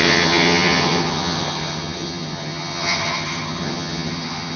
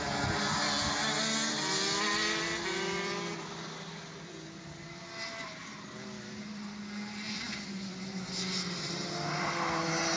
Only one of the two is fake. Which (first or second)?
first